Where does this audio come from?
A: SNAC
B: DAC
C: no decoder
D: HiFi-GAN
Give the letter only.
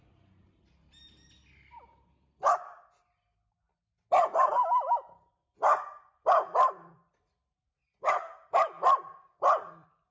C